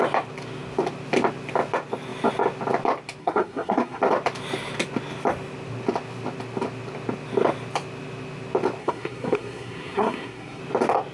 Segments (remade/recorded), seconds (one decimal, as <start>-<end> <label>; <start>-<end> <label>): 0.0-3.2 recorded; 3.2-4.0 remade; 4.0-8.8 recorded; 8.8-10.6 remade; 10.6-11.1 recorded